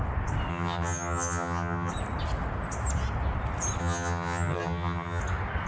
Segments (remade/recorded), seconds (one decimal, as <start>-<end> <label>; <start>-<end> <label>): 0.0-0.5 recorded; 0.5-1.9 remade; 1.9-3.8 recorded; 3.8-5.2 remade; 5.2-5.7 recorded